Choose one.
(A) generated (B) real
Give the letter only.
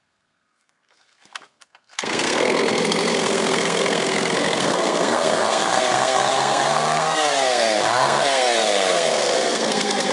A